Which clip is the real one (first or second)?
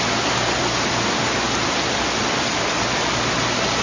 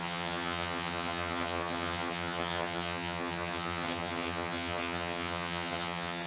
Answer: first